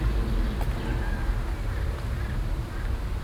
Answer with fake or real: real